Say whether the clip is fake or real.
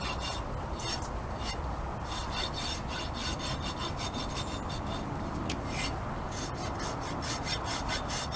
real